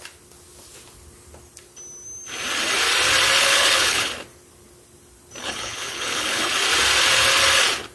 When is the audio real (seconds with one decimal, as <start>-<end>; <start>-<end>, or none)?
0.0-3.4; 4.1-5.4; 6.5-7.9